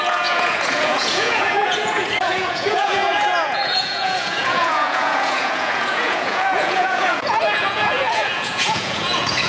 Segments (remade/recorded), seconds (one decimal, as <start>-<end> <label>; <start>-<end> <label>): 0.0-9.5 remade